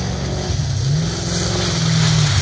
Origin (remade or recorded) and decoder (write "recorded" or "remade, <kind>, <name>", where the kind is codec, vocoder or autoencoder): recorded